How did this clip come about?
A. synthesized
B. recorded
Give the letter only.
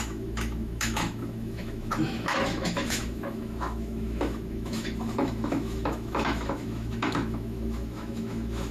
A